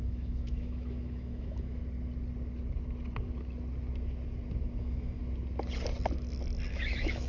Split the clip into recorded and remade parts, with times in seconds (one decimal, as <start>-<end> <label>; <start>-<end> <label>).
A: 0.0-1.8 remade; 1.8-4.8 recorded; 4.8-5.2 remade; 5.2-6.7 recorded; 6.7-7.3 remade